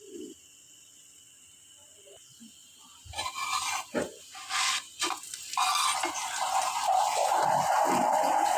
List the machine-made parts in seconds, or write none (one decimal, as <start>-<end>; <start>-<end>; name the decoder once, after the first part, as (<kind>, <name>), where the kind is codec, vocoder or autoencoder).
none